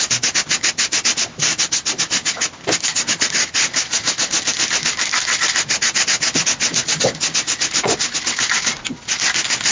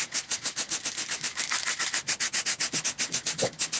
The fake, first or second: first